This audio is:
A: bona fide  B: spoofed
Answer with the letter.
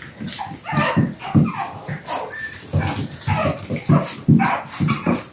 A